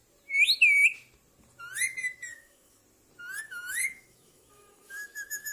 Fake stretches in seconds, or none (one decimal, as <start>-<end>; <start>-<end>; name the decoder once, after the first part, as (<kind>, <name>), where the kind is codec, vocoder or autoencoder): 2.3-2.8 (autoencoder, DAC-VAE); 3.4-5.5